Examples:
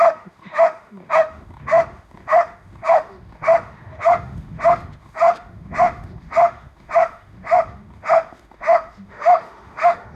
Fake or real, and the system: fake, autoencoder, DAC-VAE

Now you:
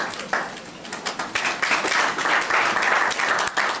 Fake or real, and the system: real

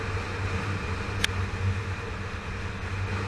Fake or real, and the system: real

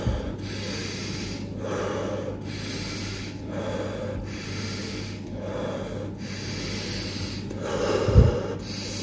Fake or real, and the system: real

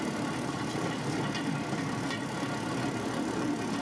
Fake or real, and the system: real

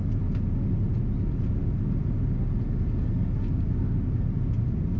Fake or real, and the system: real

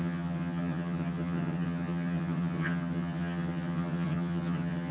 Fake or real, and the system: fake, vocoder, HiFi-GAN